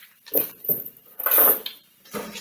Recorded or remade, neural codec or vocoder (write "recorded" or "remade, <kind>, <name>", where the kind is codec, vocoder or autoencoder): remade, vocoder, BigVGAN v2